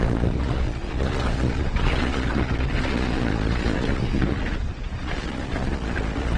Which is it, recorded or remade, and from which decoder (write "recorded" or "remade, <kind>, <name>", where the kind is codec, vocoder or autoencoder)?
remade, vocoder, Vocos